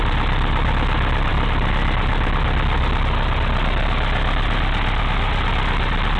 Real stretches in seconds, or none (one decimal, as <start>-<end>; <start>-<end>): 0.0-6.2